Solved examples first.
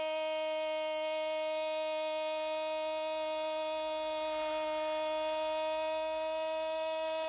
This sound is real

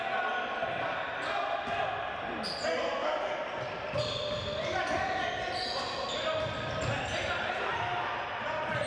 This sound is real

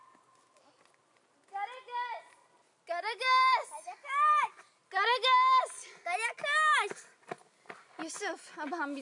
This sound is real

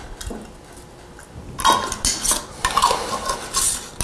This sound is real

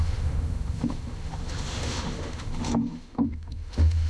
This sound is fake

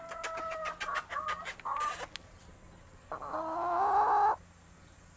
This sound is real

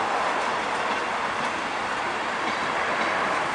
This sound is fake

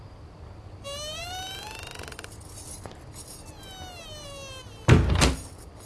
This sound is real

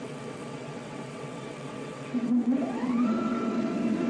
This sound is fake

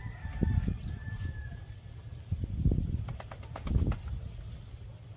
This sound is real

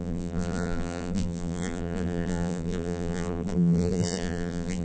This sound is fake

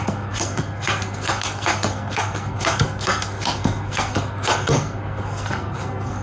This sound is fake